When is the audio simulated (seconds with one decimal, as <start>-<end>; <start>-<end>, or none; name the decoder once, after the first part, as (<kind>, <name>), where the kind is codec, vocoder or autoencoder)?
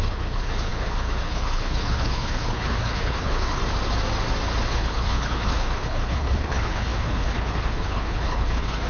0.0-3.6 (codec, HILCodec); 4.7-8.9